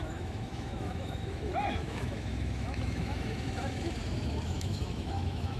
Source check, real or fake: fake